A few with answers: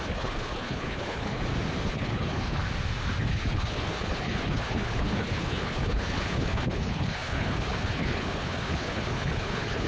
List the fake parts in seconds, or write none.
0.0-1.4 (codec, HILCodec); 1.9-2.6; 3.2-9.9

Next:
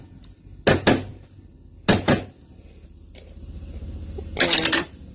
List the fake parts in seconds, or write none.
none

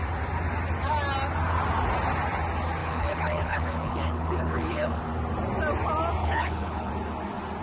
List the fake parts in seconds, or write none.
2.8-5.0 (codec, HILCodec); 6.2-6.9

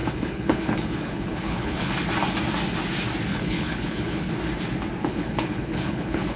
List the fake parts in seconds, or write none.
0.0-1.9 (codec, HILCodec); 3.3-4.3; 5.0-6.4

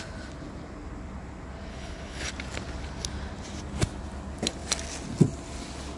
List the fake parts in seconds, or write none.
1.7-2.3 (codec, HILCodec)

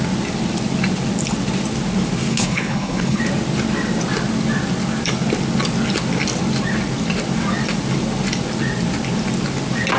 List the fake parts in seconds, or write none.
2.3-3.2 (codec, HILCodec)

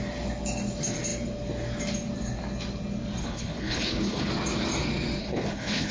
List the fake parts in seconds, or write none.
3.2-4.3 (codec, HILCodec); 5.2-5.9